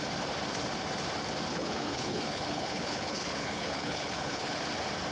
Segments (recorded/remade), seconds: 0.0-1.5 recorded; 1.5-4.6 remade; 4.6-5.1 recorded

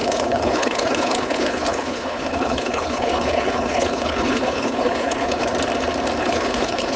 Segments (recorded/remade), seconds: 0.0-5.5 remade; 5.5-6.2 recorded; 6.2-7.0 remade

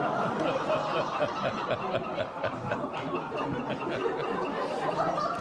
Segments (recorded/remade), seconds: 0.0-5.4 recorded